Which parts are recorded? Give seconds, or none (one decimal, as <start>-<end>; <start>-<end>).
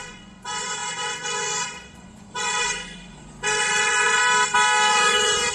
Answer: 4.2-4.9